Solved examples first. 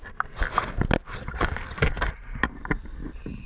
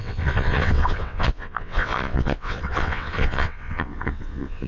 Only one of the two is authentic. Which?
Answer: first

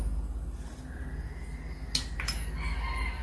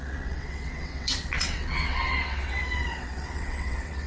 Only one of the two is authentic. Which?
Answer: first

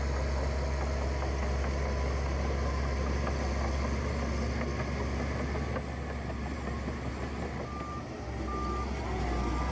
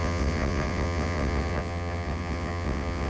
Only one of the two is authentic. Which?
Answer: first